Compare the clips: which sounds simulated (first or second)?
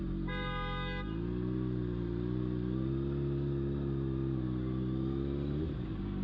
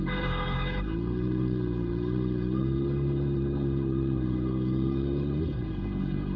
second